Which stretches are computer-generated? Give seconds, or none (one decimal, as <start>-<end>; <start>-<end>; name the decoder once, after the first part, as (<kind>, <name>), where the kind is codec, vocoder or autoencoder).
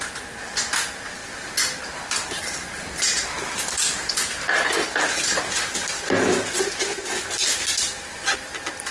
none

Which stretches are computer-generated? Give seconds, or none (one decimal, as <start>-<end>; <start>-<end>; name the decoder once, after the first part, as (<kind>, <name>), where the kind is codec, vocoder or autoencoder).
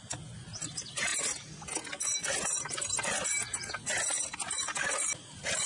none